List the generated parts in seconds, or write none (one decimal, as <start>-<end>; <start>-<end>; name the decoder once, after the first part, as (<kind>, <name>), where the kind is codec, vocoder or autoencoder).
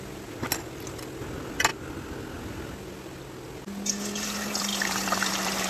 none